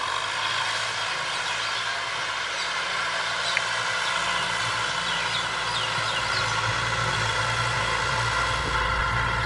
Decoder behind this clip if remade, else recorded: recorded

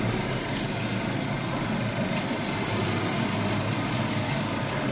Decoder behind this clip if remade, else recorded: recorded